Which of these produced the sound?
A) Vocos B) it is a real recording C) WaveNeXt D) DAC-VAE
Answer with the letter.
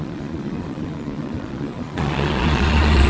A